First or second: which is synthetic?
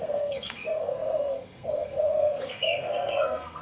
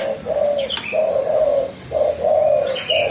first